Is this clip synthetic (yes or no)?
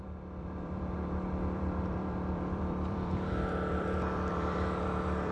yes